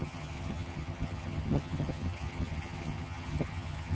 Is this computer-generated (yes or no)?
yes